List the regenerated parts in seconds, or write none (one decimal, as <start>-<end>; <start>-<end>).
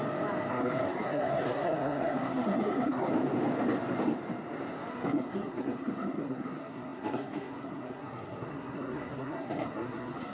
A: 0.5-3.1; 4.9-10.3